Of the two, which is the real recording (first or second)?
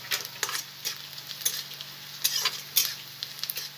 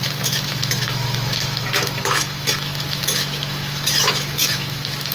first